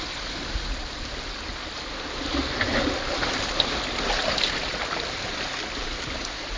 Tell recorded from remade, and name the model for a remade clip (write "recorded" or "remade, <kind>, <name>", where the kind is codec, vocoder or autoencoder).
recorded